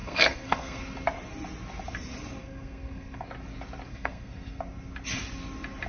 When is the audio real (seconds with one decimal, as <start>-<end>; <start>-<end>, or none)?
0.8-2.4; 3.2-3.9; 4.6-5.9